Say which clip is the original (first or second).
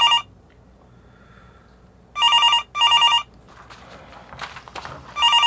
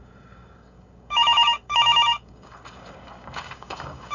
first